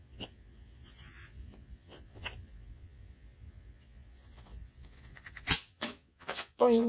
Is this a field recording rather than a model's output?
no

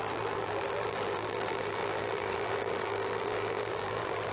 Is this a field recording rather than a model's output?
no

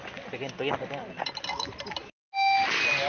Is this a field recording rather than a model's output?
yes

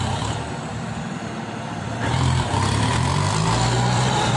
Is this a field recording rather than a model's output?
no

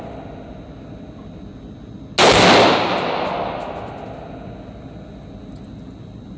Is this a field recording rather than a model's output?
yes